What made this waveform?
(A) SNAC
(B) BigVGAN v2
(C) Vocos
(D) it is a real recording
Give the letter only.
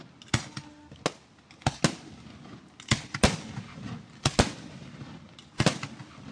D